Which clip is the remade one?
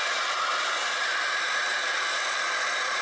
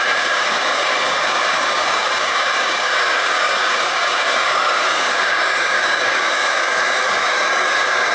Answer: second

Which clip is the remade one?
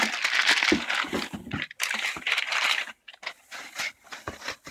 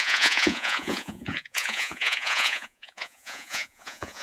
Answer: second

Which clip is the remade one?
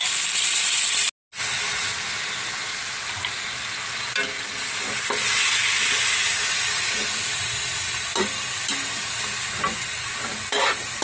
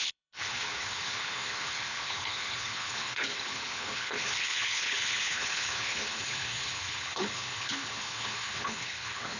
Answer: second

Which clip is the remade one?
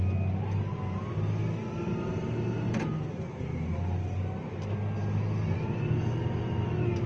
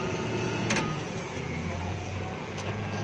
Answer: second